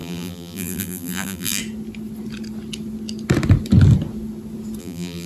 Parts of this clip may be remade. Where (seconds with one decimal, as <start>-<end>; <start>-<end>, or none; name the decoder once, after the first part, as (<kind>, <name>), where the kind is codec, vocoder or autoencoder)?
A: 0.0-1.6 (vocoder, BigVGAN v2); 4.8-5.3